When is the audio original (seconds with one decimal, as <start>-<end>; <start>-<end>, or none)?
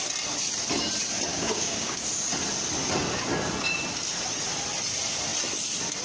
0.0-1.3; 2.1-6.0